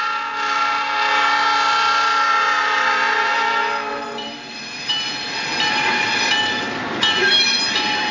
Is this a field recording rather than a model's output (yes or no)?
no